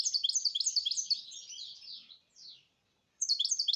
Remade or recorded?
remade